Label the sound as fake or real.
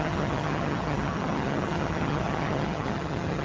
fake